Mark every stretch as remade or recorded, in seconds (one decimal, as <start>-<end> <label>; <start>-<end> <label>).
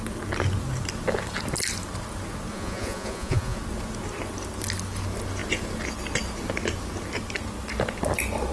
0.0-2.5 recorded; 2.5-3.6 remade; 3.6-8.5 recorded